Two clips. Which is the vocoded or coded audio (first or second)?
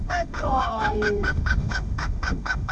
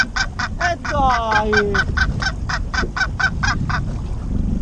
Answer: first